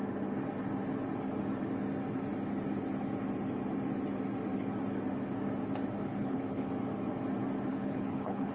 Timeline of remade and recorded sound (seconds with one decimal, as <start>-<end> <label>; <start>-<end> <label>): 0.0-6.1 recorded; 6.1-6.7 remade; 6.7-7.7 recorded; 7.7-8.5 remade